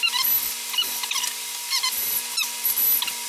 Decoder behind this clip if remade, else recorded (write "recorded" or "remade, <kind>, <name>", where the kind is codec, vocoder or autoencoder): recorded